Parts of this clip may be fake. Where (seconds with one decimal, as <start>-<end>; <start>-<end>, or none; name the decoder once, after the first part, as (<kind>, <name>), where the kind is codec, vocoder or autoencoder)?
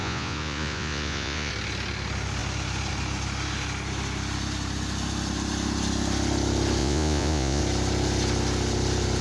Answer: 0.0-1.5 (vocoder, Vocos); 6.8-7.6